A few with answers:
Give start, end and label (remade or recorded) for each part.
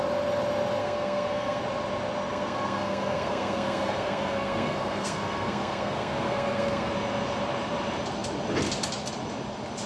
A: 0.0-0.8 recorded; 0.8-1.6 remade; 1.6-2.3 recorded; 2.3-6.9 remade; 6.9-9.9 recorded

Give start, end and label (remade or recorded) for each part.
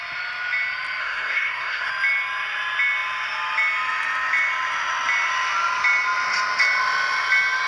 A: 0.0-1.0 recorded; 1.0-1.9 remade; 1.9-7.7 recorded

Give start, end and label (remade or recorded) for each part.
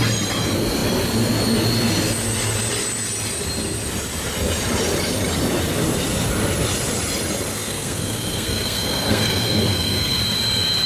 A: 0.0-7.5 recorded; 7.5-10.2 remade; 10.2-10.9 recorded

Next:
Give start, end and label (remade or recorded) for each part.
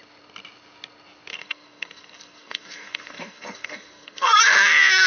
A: 0.0-1.3 recorded; 1.3-4.4 remade; 4.4-5.1 recorded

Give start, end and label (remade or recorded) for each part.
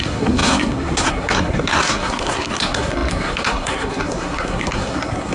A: 0.0-5.3 remade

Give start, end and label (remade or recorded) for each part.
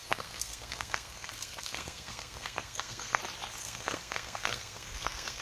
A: 0.0-3.2 remade; 3.2-3.6 recorded; 3.6-5.4 remade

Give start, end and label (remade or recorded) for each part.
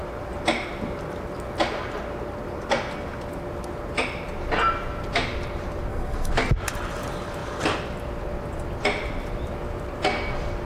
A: 0.0-5.9 recorded; 5.9-6.5 remade; 6.5-10.7 recorded